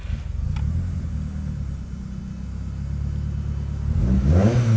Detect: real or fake real